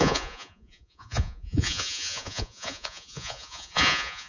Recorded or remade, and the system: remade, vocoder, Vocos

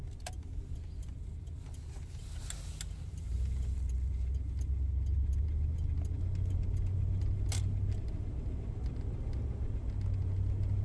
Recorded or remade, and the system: recorded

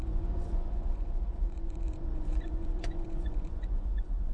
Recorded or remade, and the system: remade, vocoder, Vocos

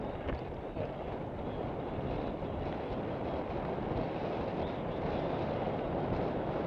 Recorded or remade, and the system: recorded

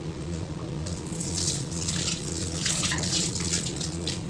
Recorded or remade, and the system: remade, vocoder, Vocos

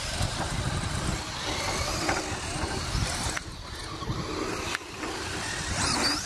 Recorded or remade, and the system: recorded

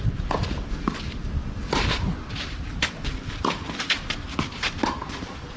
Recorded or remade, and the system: recorded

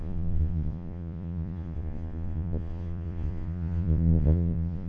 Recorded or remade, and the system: remade, vocoder, Vocos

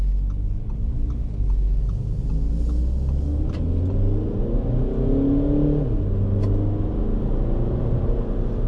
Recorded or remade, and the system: recorded